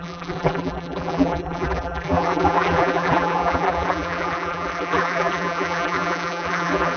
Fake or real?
fake